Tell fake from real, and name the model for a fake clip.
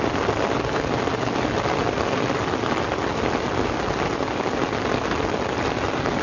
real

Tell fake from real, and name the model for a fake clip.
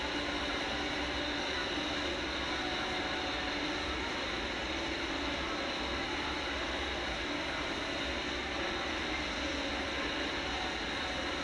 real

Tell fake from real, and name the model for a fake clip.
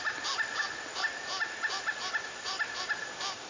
real